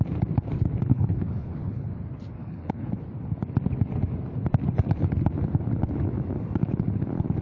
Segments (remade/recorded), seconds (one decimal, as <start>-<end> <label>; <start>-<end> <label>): 0.0-0.9 recorded; 0.9-1.9 remade; 1.9-2.4 recorded; 2.4-2.9 remade; 2.9-7.4 recorded

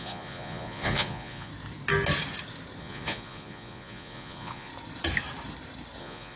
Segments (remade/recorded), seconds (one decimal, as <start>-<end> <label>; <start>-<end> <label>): 0.0-1.5 remade; 1.5-2.8 recorded; 2.8-4.7 remade; 4.7-6.0 recorded; 6.0-6.4 remade

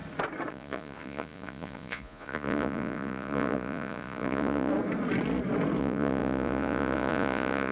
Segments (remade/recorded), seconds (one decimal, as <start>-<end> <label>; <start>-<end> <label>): 0.0-0.5 recorded; 0.5-4.7 remade; 4.7-5.8 recorded; 5.8-7.7 remade

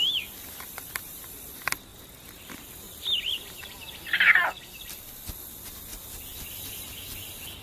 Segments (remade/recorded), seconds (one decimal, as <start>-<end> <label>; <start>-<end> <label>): 0.0-1.9 recorded; 1.9-4.4 remade; 4.4-7.6 recorded

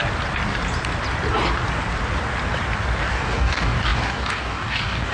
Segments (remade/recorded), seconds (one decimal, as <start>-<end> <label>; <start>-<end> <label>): 0.0-3.1 recorded; 3.1-5.1 remade